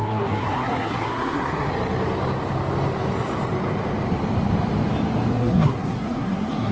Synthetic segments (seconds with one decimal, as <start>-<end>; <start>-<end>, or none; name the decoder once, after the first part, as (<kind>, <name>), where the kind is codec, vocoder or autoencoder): 0.0-1.7 (codec, SNAC); 5.3-6.7